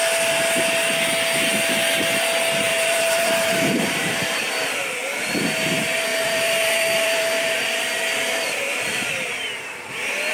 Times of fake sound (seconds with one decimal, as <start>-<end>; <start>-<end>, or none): 2.7-4.5; 6.1-7.6; 8.9-9.5